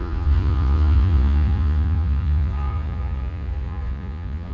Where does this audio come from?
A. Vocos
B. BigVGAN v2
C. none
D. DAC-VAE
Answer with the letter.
A